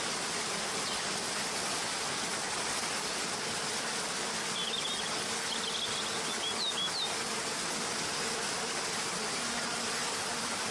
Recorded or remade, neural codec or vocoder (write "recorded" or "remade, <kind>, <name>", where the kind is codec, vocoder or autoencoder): recorded